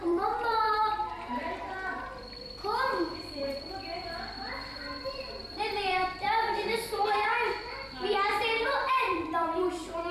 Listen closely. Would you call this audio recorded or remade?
remade